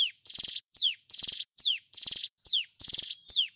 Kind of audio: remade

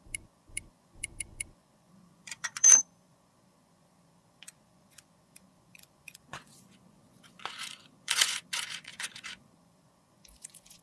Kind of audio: remade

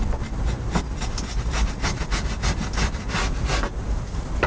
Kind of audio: recorded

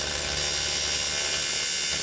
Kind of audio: recorded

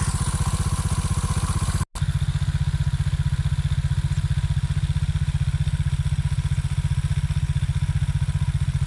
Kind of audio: recorded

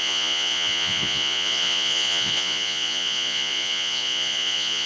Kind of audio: remade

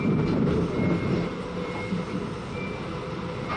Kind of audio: recorded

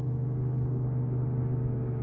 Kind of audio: recorded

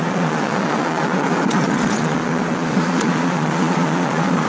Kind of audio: remade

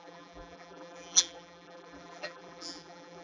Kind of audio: remade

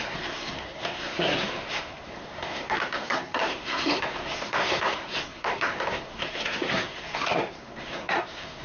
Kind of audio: remade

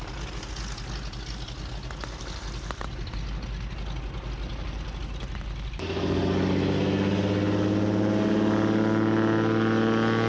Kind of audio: recorded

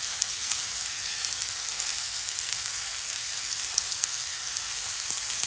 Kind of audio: remade